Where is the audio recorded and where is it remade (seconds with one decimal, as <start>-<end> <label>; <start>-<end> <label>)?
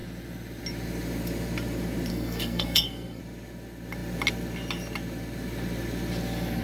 0.0-2.1 recorded; 2.1-3.2 remade; 3.2-6.6 recorded